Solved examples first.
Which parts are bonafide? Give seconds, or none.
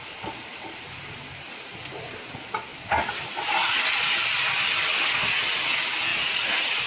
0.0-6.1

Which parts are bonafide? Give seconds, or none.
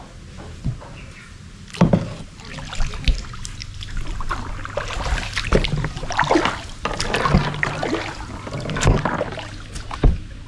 0.0-3.6; 6.1-10.5